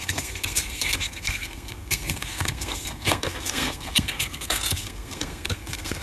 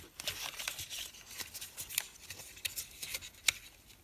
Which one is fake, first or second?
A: first